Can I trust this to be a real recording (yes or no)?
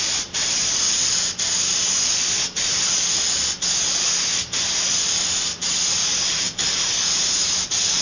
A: yes